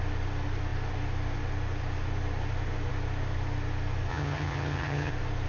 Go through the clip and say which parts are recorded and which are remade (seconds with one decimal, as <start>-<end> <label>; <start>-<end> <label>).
0.0-4.1 recorded; 4.1-5.1 remade; 5.1-5.5 recorded